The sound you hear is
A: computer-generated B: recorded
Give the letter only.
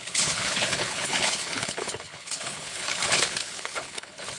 A